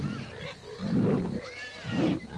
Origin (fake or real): real